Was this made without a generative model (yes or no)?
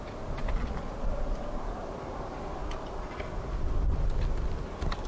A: yes